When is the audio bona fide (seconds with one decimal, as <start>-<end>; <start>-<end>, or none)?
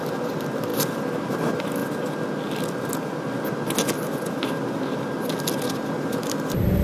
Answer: 0.7-1.3; 1.8-5.9